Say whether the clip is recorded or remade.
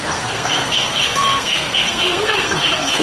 remade